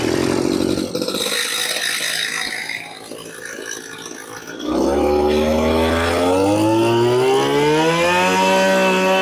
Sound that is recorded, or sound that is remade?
recorded